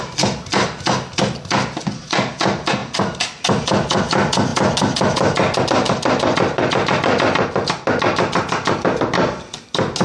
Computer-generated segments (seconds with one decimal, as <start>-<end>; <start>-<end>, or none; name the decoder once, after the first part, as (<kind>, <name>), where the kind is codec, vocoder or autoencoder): none